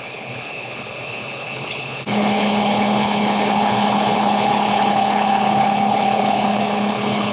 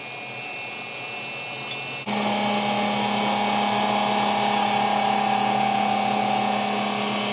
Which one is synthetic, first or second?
first